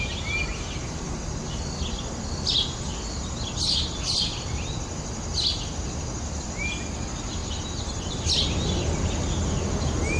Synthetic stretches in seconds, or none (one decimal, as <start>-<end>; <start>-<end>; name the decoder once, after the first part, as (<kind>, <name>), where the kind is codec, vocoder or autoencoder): none